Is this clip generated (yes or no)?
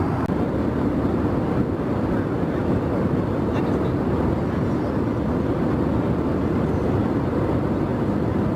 no